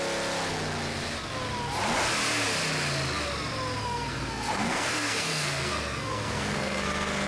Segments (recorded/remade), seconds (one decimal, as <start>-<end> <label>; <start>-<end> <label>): 0.0-3.8 recorded; 3.8-7.3 remade